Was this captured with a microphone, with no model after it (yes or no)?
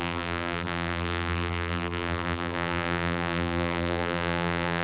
no